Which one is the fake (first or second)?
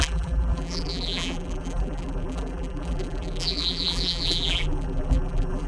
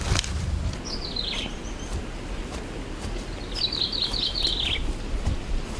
first